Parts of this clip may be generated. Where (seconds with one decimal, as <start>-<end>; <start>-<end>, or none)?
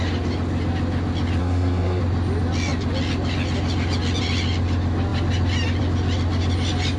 1.4-2.0